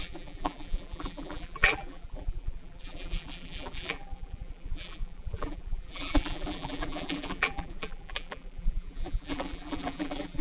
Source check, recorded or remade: remade